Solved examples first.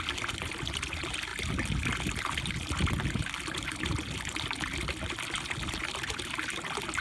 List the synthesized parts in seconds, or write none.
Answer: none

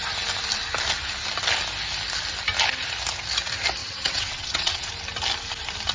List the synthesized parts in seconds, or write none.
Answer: 3.8-4.9 (vocoder, WaveNeXt)

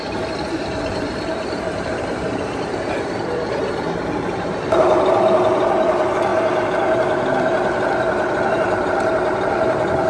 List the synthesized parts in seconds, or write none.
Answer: 0.0-6.3 (vocoder, BigVGAN v2); 8.5-10.1

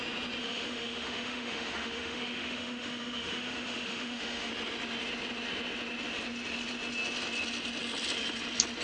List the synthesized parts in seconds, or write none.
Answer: 0.4-4.5 (autoencoder, DAC-VAE)

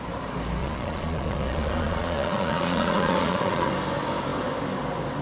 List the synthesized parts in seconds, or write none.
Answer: 0.6-3.7 (vocoder, Vocos)

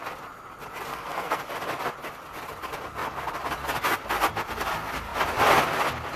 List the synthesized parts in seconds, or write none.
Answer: 0.9-1.5 (codec, SNAC)